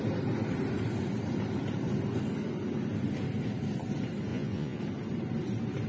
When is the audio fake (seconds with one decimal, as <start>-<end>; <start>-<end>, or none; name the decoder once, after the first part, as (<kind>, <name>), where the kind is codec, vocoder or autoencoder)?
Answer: 4.3-4.8 (vocoder, Vocos)